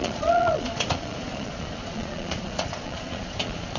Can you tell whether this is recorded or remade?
remade